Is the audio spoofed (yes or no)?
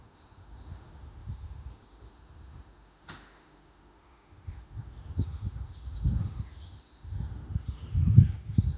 yes